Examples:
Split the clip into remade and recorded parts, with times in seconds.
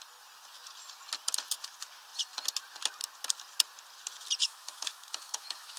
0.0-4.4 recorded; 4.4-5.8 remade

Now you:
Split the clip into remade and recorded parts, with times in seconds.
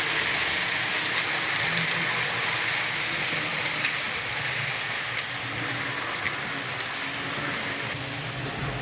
0.0-8.8 recorded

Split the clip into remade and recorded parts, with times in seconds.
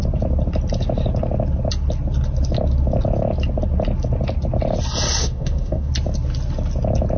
0.0-5.2 recorded; 5.2-5.9 remade; 5.9-7.2 recorded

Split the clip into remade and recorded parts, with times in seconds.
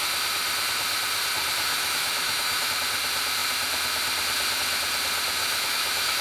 0.0-1.7 recorded; 1.7-2.7 remade; 2.7-5.4 recorded; 5.4-6.2 remade